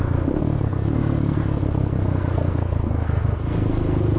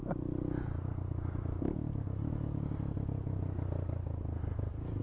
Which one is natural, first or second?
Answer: second